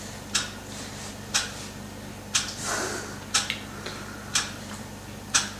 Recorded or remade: recorded